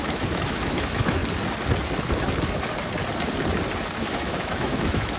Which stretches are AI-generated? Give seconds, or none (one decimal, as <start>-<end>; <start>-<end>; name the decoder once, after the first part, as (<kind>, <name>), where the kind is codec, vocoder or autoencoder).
0.0-1.2 (autoencoder, DAC-VAE); 4.0-5.2